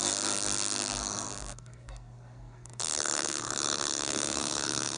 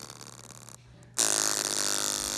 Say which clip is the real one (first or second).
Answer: second